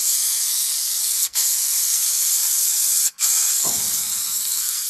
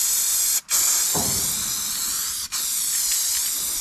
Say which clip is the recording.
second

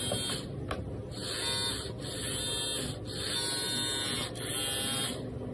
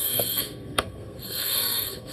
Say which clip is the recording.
first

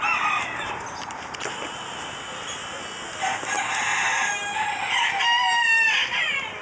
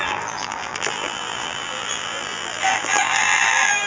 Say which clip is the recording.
first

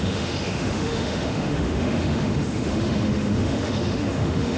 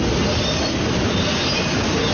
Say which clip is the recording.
second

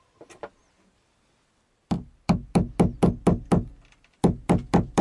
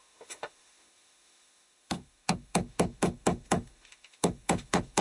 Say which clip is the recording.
first